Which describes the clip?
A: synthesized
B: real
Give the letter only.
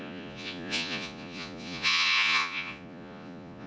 A